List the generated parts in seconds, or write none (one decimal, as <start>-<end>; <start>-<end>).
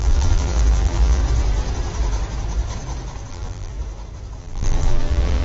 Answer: 0.0-1.2; 3.3-3.7; 4.4-5.4